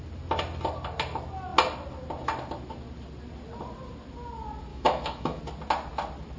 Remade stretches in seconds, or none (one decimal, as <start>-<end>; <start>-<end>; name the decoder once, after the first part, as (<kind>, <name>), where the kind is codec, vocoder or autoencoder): 4.7-5.4 (autoencoder, DAC-VAE)